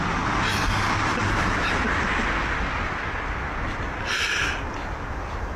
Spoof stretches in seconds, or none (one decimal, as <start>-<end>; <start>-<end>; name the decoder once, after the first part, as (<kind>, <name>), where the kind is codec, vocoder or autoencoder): none